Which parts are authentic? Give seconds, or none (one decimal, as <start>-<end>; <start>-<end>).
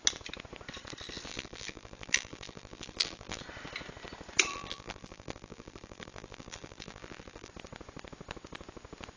0.0-1.3; 3.4-4.5; 7.5-9.2